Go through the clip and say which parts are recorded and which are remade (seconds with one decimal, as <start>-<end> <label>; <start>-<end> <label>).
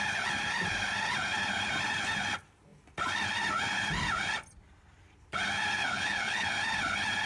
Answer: 0.0-5.8 recorded; 5.8-6.5 remade; 6.5-7.3 recorded